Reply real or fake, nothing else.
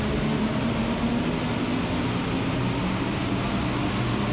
real